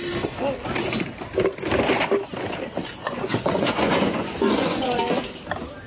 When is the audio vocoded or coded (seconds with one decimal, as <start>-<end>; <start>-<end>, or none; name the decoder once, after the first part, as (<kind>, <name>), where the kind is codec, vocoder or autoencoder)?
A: 3.0-5.0 (vocoder, Vocos)